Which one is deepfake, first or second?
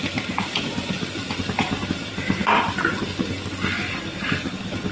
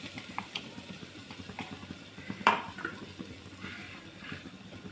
second